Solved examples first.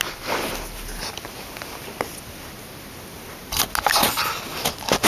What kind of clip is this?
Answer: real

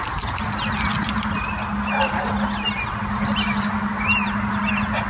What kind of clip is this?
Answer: real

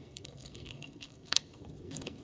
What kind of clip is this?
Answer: fake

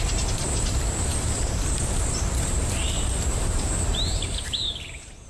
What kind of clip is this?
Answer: fake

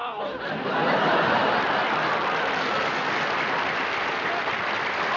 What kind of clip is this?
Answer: real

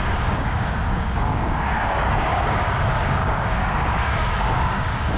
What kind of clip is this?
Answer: fake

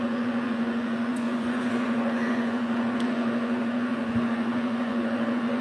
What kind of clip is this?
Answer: fake